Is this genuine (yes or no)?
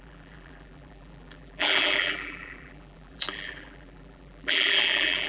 no